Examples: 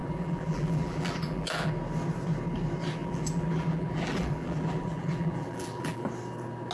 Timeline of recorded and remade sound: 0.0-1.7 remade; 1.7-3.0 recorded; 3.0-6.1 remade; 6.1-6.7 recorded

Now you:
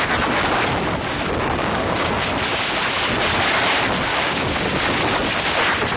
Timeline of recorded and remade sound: 0.0-1.6 recorded; 1.6-2.1 remade; 2.1-4.1 recorded; 4.1-4.8 remade; 4.8-6.0 recorded

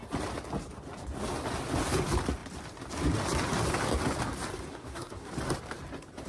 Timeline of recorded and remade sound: 0.0-4.7 recorded; 4.7-5.3 remade; 5.3-6.3 recorded

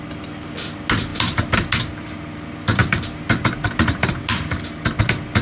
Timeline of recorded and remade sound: 0.0-5.4 recorded

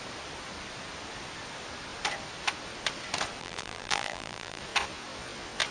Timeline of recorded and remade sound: 0.0-3.4 recorded; 3.4-4.6 remade; 4.6-5.7 recorded